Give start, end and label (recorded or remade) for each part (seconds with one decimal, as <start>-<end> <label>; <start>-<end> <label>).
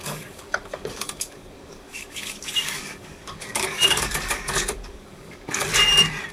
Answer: 0.0-5.7 remade; 5.7-6.3 recorded